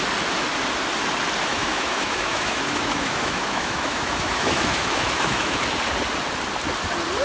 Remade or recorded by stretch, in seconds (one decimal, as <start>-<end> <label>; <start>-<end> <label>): 0.0-1.5 recorded; 1.5-5.6 remade; 5.6-7.2 recorded